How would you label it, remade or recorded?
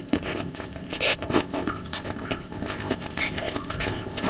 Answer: remade